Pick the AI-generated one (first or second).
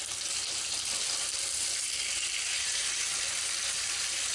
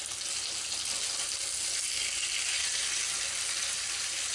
first